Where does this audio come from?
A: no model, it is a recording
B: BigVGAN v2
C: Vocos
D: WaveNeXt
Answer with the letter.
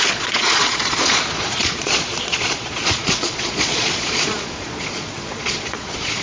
C